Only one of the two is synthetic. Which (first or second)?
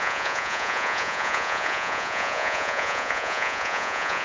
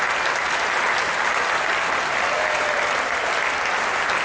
first